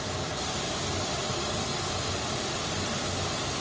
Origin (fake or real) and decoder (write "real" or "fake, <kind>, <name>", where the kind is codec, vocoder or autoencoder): fake, vocoder, BigVGAN v2